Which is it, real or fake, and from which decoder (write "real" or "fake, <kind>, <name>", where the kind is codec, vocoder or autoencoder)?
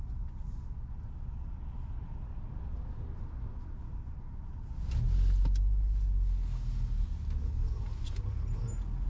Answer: real